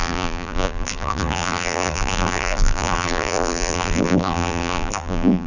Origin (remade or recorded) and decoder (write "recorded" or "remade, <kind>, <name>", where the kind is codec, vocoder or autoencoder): remade, vocoder, BigVGAN v2